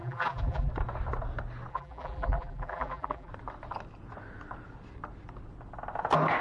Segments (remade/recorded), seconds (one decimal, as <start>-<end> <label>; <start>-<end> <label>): 0.0-0.7 remade; 0.7-1.7 recorded; 1.7-3.3 remade; 3.3-6.4 recorded